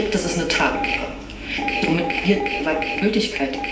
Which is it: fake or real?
fake